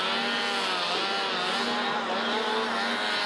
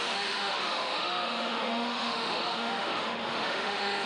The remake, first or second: second